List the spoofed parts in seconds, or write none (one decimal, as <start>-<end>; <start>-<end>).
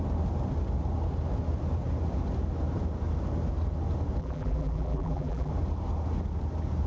4.2-5.5